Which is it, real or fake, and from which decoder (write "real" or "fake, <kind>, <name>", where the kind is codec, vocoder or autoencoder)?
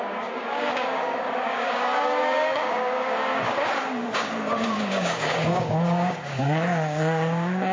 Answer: fake, codec, DAC